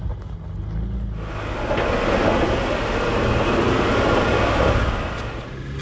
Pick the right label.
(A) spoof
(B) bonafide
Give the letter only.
B